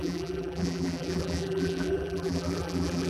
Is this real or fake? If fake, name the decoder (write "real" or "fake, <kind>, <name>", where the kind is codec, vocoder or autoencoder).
fake, vocoder, BigVGAN v2